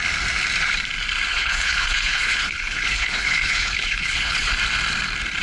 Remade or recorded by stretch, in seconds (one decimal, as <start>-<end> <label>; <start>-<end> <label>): 0.0-1.3 recorded; 1.3-4.5 remade; 4.5-5.4 recorded